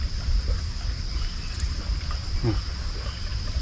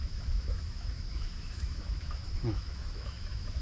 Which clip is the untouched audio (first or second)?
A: first